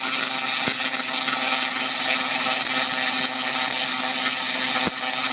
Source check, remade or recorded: recorded